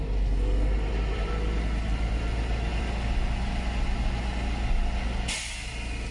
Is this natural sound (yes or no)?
yes